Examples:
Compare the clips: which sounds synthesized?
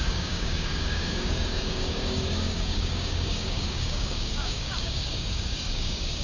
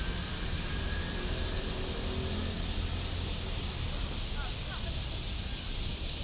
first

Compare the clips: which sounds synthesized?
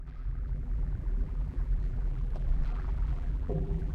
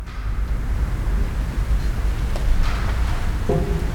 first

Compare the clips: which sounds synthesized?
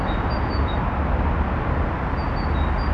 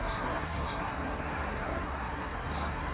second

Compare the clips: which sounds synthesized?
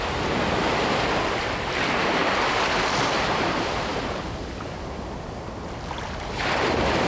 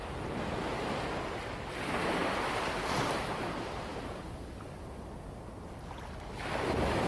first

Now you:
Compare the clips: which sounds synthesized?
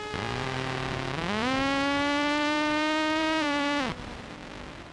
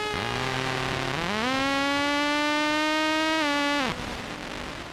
first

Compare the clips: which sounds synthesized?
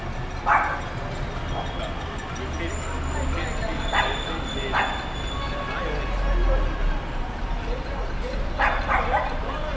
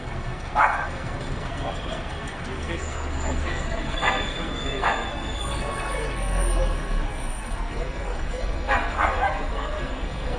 second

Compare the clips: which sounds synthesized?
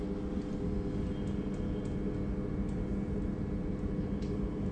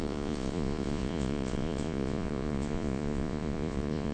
second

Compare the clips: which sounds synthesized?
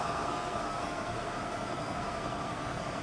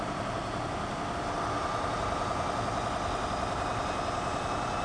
first